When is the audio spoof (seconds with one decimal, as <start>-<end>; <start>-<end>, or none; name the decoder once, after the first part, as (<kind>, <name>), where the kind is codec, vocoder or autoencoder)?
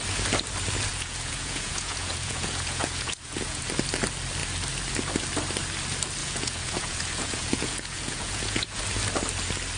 0.9-3.6 (vocoder, Vocos); 6.2-8.8